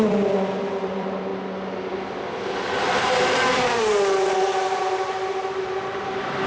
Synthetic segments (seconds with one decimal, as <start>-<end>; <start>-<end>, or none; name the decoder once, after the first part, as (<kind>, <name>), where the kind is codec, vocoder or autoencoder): 0.0-1.3 (vocoder, BigVGAN v2); 3.0-6.5